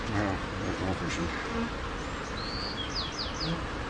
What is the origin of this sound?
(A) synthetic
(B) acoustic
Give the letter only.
B